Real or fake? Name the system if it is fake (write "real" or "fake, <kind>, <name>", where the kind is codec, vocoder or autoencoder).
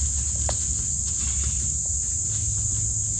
real